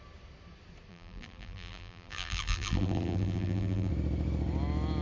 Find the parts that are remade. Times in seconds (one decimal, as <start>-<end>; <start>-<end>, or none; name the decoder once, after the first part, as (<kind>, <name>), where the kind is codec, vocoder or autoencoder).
0.9-3.9 (vocoder, BigVGAN v2)